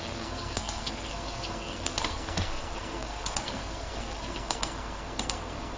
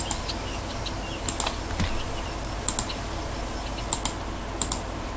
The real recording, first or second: second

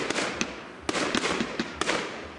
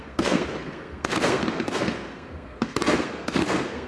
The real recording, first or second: first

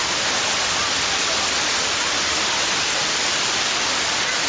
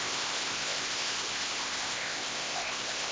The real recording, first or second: first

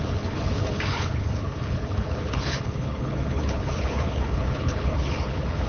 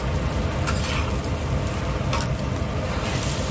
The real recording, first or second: second